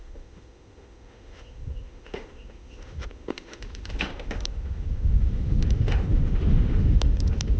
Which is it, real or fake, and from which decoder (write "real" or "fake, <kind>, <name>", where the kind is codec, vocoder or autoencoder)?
fake, autoencoder, DAC-VAE